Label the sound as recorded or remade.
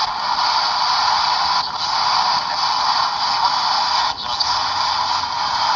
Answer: recorded